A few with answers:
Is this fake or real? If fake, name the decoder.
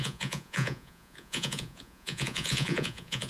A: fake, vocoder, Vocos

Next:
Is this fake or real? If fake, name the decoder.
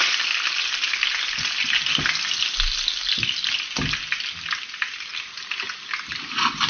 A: real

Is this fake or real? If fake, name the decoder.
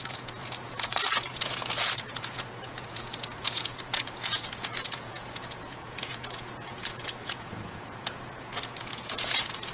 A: fake, vocoder, Vocos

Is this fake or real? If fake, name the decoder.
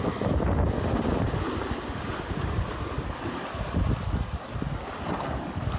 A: real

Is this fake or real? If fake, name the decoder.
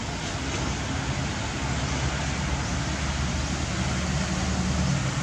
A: real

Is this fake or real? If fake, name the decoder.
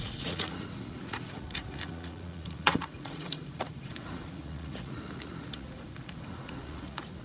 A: fake, vocoder, Vocos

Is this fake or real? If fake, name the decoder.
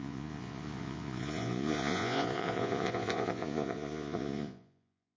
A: fake, vocoder, Vocos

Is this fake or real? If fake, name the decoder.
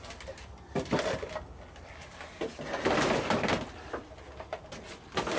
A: real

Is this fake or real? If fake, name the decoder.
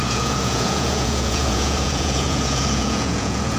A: fake, vocoder, Vocos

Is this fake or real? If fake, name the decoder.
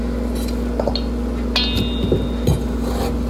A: real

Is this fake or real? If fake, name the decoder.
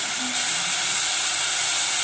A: real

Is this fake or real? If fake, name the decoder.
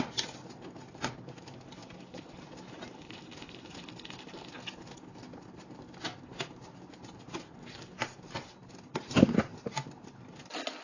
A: real